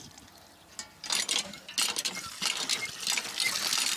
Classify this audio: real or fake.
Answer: real